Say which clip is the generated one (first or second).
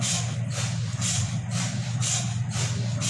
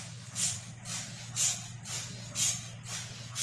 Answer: first